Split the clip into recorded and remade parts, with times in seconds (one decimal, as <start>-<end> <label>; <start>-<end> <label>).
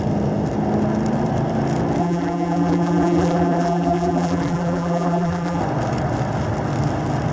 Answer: 0.0-2.0 recorded; 2.0-5.6 remade; 5.6-7.3 recorded